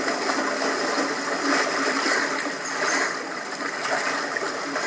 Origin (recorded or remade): recorded